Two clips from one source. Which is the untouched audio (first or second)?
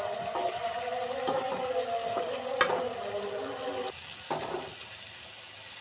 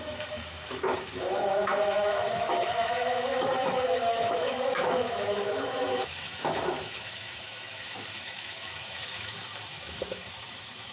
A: first